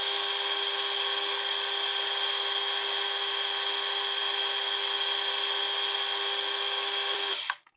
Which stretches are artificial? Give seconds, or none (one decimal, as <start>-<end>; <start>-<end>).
none